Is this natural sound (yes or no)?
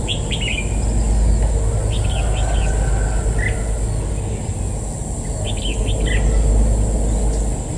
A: yes